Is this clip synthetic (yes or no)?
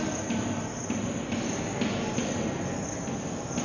no